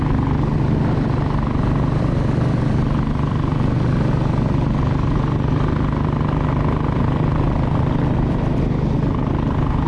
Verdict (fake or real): real